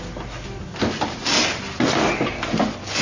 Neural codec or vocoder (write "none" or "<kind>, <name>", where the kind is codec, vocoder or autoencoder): none